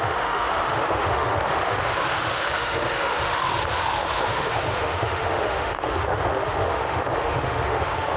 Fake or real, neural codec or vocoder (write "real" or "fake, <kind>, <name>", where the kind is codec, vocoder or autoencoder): fake, autoencoder, DAC-VAE